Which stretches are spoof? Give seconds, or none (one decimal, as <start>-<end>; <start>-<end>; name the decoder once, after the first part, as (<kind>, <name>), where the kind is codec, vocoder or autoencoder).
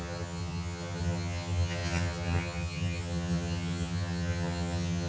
0.0-5.1 (vocoder, HiFi-GAN)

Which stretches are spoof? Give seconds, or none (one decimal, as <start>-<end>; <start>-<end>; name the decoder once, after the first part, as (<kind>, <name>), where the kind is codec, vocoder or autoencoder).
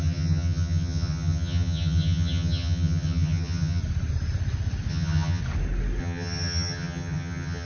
0.0-3.8 (vocoder, HiFi-GAN); 4.9-5.4; 6.0-7.6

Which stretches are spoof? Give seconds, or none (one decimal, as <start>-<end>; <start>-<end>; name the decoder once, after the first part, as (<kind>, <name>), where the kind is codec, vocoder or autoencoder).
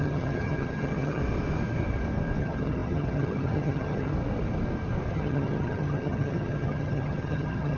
0.0-1.2 (vocoder, HiFi-GAN); 2.4-4.1; 5.1-7.8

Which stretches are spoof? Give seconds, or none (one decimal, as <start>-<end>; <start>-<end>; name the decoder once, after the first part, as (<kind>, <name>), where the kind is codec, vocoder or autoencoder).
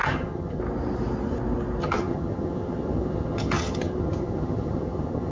0.0-0.6 (vocoder, HiFi-GAN); 1.8-5.3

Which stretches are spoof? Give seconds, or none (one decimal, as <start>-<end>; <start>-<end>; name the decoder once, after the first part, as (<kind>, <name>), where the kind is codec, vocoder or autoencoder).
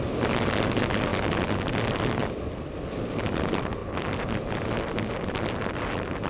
none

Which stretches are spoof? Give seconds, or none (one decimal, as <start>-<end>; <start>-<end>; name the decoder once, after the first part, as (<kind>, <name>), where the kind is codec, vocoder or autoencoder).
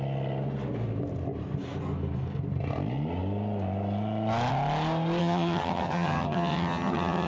5.2-7.3 (vocoder, HiFi-GAN)